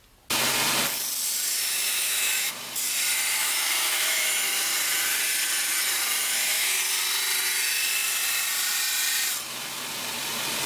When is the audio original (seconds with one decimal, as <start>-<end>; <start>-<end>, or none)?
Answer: 0.0-1.5; 2.5-3.4; 4.7-6.2; 6.8-10.7